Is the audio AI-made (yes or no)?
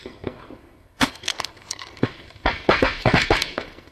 yes